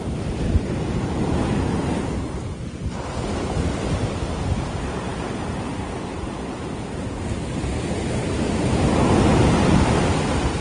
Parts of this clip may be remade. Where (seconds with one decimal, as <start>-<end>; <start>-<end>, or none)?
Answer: none